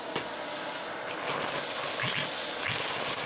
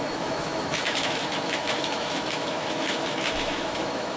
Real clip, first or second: first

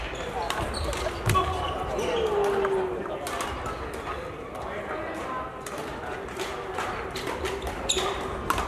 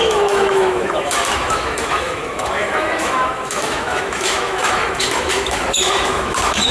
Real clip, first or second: first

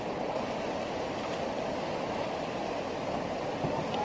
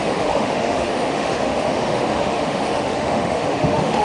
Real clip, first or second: first